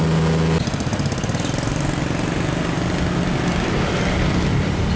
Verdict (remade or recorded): recorded